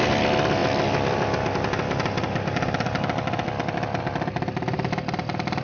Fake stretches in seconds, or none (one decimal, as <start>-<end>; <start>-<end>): none